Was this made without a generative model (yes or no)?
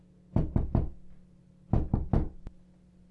yes